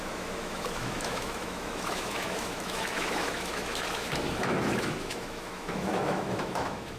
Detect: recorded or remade remade